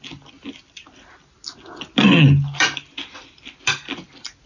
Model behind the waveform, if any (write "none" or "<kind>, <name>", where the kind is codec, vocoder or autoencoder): none